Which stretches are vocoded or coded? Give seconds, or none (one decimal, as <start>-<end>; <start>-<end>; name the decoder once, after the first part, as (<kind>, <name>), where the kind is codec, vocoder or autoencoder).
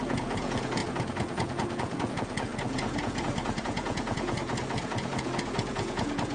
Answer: 0.0-6.3 (vocoder, Vocos)